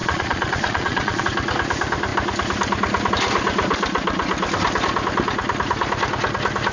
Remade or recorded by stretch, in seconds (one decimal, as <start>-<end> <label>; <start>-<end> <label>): 0.0-1.2 remade; 1.2-6.7 recorded